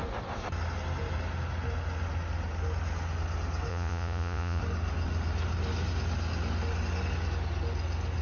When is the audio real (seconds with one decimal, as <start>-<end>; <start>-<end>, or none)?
0.0-3.7; 4.6-8.2